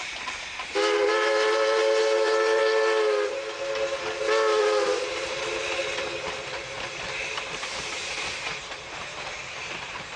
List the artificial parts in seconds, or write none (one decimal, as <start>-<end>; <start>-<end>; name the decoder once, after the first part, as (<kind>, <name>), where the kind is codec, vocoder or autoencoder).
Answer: 0.0-2.6 (vocoder, BigVGAN v2); 4.6-5.8; 6.9-10.2